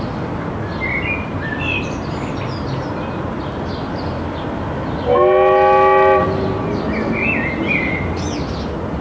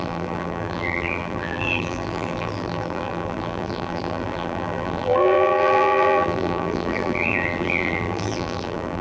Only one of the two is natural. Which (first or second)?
first